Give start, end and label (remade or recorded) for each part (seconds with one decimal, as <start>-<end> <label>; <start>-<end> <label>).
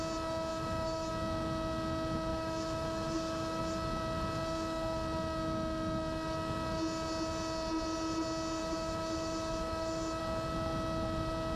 0.0-0.5 recorded; 0.5-1.1 remade; 1.1-2.3 recorded; 2.3-3.6 remade; 3.6-8.6 recorded; 8.6-10.2 remade; 10.2-11.6 recorded